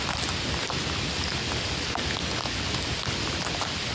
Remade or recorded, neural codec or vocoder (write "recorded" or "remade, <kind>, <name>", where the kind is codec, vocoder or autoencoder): recorded